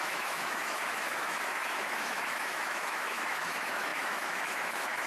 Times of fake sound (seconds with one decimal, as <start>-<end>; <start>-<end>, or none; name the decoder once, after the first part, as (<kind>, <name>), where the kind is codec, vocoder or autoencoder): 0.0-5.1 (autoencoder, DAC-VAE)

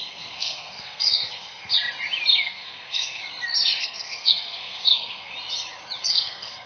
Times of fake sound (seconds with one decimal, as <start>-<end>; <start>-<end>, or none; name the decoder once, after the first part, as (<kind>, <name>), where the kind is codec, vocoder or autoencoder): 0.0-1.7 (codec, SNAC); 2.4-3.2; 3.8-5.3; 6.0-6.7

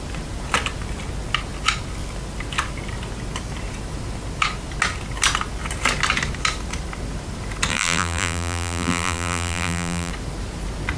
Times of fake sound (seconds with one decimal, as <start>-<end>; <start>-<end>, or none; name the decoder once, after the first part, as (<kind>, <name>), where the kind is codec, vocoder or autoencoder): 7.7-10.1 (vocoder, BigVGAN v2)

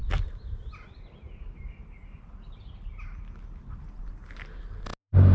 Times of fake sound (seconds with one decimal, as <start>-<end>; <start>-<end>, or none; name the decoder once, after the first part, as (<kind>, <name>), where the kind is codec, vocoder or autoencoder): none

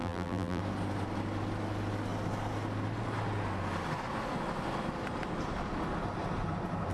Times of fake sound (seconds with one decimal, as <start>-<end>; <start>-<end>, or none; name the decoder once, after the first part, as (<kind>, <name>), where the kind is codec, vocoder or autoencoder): 0.0-0.6 (vocoder, BigVGAN v2)